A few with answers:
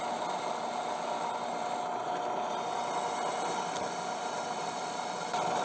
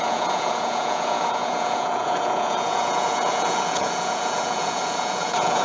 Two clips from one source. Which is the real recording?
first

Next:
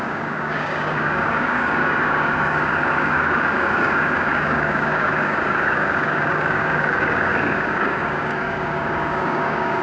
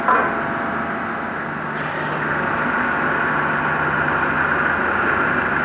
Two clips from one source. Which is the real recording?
second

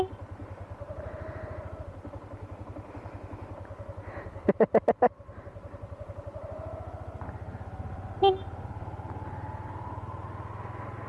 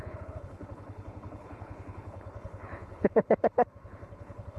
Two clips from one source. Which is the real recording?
first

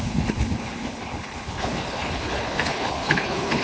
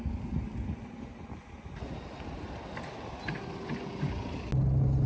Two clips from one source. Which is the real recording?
second